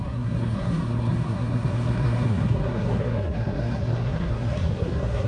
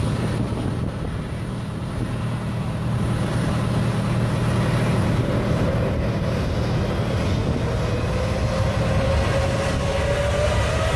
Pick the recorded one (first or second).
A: second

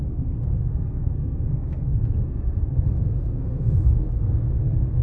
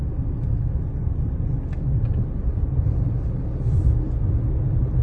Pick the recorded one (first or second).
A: second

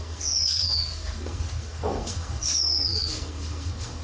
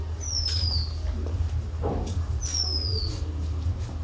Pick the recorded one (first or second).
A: second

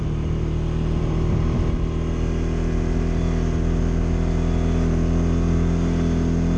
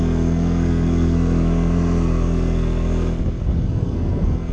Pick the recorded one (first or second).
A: first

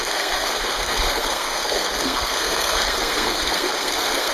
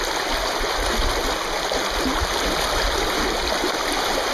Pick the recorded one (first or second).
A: second